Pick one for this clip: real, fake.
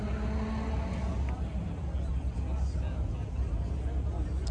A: real